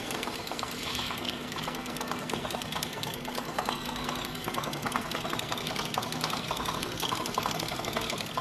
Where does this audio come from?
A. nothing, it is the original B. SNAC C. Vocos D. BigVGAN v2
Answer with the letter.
B